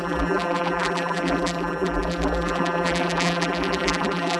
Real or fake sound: fake